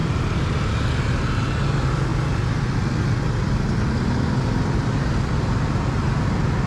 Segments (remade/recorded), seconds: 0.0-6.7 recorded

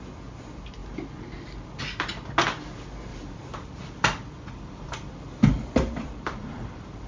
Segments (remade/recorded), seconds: 0.0-3.1 recorded; 3.1-7.1 remade

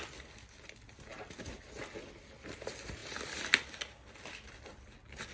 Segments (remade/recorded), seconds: 0.0-5.3 recorded

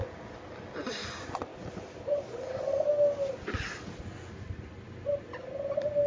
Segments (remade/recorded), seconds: 0.0-6.1 recorded

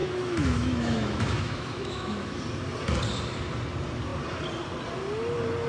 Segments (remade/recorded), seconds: 0.0-2.4 remade; 2.4-5.7 recorded